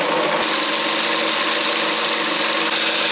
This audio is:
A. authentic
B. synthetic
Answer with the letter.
A